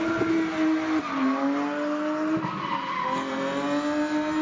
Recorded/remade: recorded